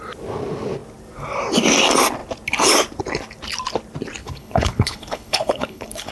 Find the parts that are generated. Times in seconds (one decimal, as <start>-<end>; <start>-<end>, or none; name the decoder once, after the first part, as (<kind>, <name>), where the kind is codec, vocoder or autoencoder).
4.2-6.1 (codec, HILCodec)

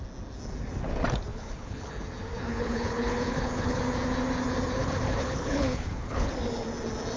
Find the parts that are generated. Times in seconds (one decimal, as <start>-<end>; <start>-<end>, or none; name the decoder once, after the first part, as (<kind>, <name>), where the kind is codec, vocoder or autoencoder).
1.3-1.9 (codec, HILCodec); 2.5-3.8; 4.8-6.3

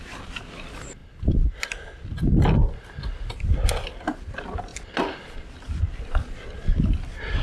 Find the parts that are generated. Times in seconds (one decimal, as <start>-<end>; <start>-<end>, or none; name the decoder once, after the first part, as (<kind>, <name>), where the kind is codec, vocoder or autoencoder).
none